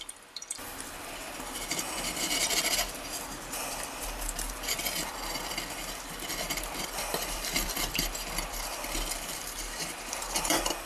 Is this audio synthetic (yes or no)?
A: yes